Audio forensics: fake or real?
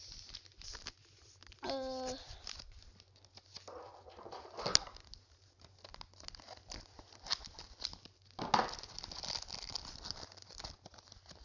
real